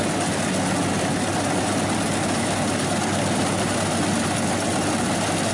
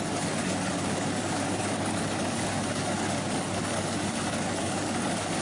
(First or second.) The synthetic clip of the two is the second